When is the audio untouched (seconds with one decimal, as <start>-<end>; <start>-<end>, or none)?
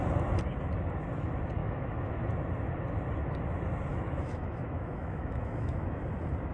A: 0.0-1.6; 2.1-3.9; 6.0-6.5